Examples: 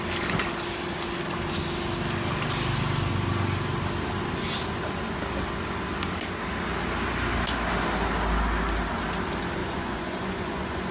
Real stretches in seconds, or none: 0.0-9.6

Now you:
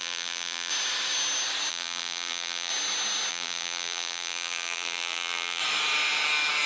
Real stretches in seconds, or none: 0.7-1.7; 2.7-3.3; 5.6-6.7